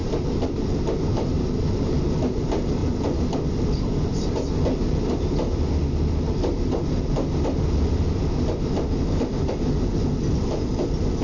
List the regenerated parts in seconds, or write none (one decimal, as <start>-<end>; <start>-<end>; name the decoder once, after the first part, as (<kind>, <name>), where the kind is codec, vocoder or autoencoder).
none